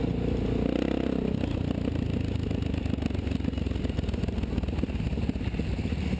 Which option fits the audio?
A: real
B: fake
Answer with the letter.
A